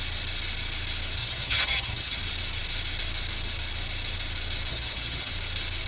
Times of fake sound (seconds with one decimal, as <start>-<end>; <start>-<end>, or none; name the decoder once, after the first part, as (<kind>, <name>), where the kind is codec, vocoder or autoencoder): 1.2-2.2 (vocoder, HiFi-GAN); 4.7-5.3